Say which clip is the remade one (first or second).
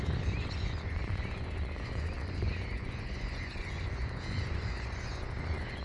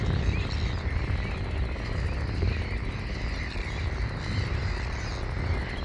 first